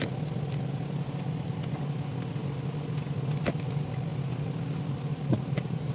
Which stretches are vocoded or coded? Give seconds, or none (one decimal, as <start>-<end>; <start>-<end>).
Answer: 5.1-5.9